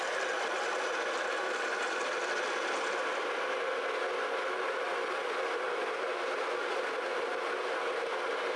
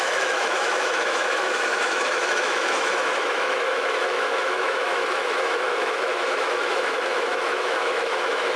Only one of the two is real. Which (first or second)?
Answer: first